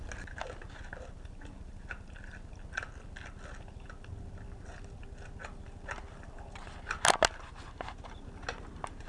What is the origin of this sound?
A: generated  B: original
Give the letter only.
B